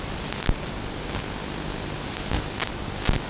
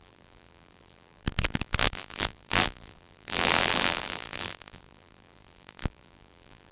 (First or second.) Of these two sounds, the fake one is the second